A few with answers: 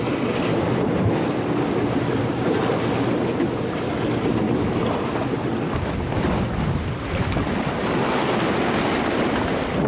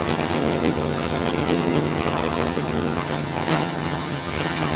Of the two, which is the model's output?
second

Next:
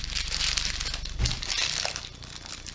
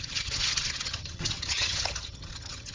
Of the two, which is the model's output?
second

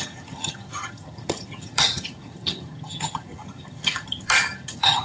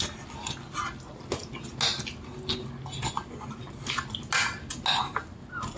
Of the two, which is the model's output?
first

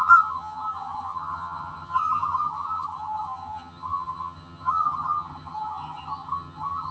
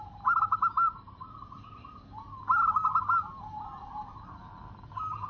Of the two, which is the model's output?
first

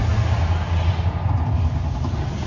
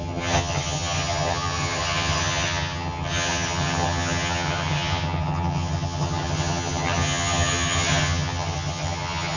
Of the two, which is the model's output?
second